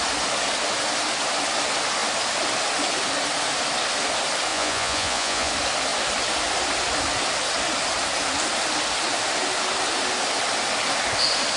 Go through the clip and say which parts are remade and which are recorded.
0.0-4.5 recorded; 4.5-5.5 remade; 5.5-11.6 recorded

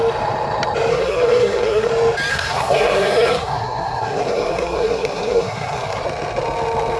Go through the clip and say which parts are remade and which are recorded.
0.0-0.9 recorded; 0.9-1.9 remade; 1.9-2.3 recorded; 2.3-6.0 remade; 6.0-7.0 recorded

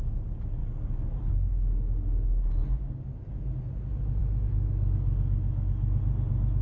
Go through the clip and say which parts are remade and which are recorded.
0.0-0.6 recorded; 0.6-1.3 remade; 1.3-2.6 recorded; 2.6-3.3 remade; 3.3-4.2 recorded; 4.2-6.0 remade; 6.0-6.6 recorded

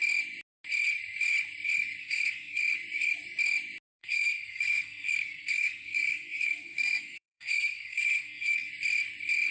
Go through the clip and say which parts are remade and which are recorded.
0.0-2.0 recorded; 2.0-2.6 remade; 2.6-4.0 recorded; 4.0-8.7 remade; 8.7-9.5 recorded

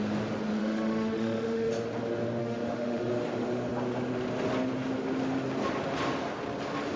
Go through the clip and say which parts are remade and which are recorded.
0.0-0.6 recorded; 0.6-1.7 remade; 1.7-2.4 recorded; 2.4-3.1 remade; 3.1-7.0 recorded

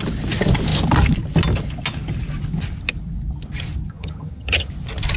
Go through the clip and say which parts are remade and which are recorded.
0.0-3.9 recorded; 3.9-4.7 remade; 4.7-5.2 recorded

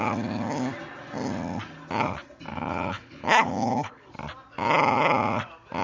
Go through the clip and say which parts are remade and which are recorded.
0.0-2.5 recorded; 2.5-4.1 remade; 4.1-5.8 recorded